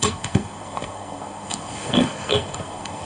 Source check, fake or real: fake